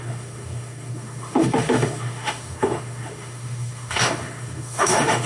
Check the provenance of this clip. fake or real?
fake